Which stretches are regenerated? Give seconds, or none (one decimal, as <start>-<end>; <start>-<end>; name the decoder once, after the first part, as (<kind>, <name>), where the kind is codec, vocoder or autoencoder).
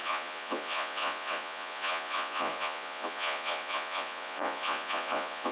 0.0-5.5 (vocoder, Vocos)